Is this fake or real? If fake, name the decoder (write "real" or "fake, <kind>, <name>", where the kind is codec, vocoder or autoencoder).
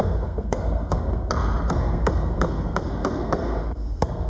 fake, codec, SNAC